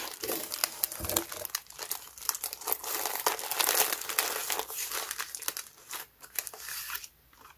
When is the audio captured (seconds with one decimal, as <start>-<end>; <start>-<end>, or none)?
0.6-2.1; 2.8-6.0